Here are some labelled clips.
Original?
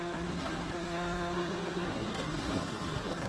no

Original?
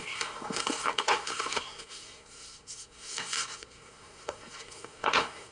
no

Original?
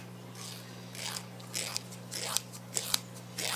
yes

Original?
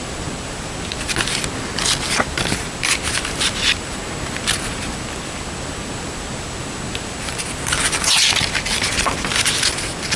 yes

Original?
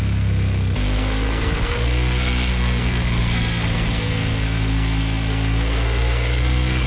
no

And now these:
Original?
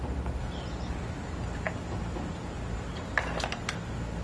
yes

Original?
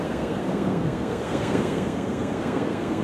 no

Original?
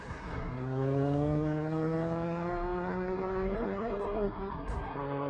no